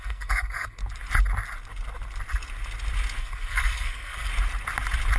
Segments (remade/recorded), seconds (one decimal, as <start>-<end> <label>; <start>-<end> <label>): 0.0-0.8 remade; 0.8-3.2 recorded; 3.2-4.3 remade; 4.3-5.2 recorded